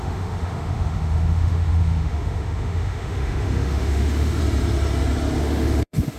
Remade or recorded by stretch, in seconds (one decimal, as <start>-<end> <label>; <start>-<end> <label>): 0.0-4.4 remade; 4.4-5.4 recorded; 5.4-6.2 remade